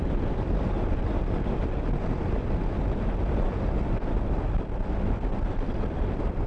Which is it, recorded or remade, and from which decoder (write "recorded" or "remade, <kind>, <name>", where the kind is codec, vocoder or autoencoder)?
recorded